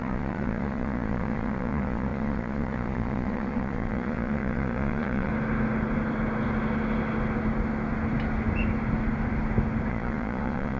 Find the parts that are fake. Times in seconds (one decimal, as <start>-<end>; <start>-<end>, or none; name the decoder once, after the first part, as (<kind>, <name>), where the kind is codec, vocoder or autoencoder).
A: 0.0-5.3 (vocoder, Vocos); 9.9-10.8

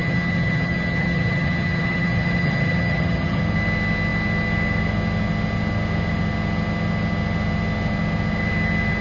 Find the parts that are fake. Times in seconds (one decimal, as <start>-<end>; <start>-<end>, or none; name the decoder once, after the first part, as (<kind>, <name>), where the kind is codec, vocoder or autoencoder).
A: 0.0-3.4 (vocoder, HiFi-GAN)

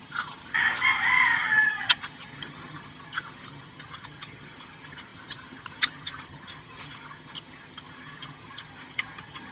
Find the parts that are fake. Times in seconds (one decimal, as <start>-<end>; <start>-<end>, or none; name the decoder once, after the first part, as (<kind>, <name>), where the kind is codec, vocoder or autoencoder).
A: 0.0-0.6 (vocoder, HiFi-GAN); 1.4-9.5

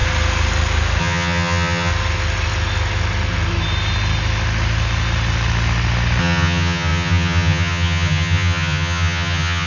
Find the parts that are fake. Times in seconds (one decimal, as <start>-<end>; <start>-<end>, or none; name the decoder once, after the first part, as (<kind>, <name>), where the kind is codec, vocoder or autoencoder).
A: 1.0-1.9 (vocoder, HiFi-GAN); 6.2-9.7

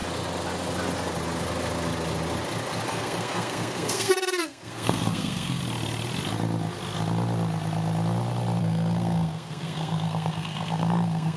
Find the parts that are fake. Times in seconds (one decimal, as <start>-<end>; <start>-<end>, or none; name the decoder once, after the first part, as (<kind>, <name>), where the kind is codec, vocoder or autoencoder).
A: 2.9-5.6 (codec, SNAC); 8.6-11.4

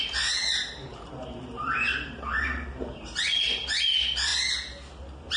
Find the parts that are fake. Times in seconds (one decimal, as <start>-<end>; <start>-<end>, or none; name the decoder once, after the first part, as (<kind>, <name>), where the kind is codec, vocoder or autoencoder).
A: 0.9-3.0 (vocoder, BigVGAN v2)

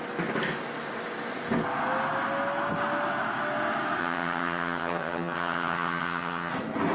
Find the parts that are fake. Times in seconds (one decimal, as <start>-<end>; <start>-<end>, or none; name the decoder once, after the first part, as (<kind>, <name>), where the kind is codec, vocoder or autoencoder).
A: 4.0-6.5 (vocoder, HiFi-GAN)

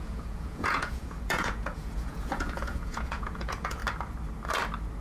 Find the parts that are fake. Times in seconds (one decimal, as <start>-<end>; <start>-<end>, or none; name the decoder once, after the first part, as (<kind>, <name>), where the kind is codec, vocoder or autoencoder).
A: 0.0-3.8 (vocoder, Vocos)